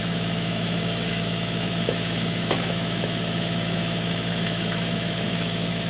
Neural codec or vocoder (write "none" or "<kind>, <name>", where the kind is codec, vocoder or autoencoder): autoencoder, DAC-VAE